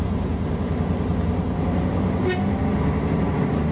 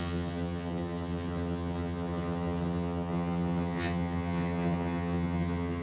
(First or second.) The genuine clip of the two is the first